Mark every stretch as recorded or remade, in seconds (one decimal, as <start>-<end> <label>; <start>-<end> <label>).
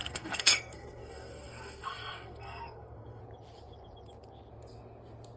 0.0-3.2 remade; 3.2-5.4 recorded